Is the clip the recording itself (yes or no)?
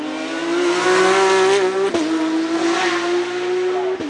yes